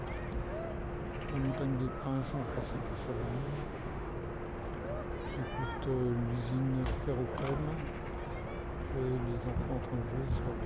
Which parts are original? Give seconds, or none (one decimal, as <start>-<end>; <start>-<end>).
0.0-2.0; 4.1-10.7